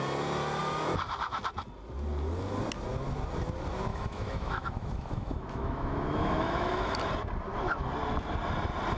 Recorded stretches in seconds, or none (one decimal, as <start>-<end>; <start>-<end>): 0.0-3.9; 7.0-9.0